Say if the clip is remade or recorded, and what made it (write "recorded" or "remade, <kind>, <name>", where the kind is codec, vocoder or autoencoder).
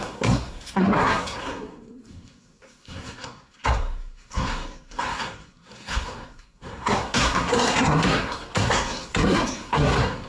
remade, codec, SNAC